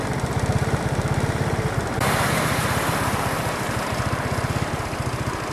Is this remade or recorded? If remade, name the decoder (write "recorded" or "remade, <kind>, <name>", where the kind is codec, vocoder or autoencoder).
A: recorded